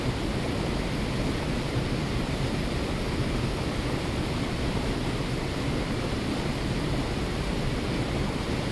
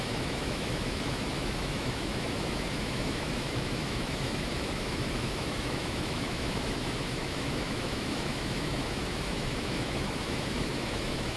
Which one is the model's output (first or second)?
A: second